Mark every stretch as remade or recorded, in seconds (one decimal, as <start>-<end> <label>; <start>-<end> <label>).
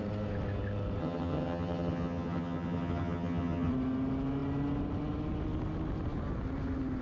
0.0-1.0 recorded; 1.0-3.7 remade; 3.7-7.0 recorded